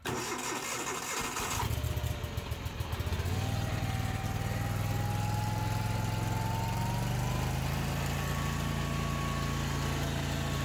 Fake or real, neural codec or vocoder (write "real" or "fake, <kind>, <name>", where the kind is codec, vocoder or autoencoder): real